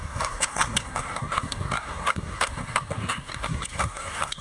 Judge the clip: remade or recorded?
remade